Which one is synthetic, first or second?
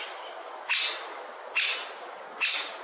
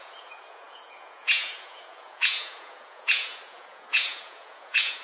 second